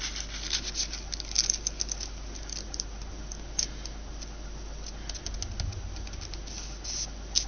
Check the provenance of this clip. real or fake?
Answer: real